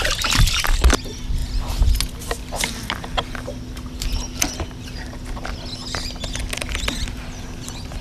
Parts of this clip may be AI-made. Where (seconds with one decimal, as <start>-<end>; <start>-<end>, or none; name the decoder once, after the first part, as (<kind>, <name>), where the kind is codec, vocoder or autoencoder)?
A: none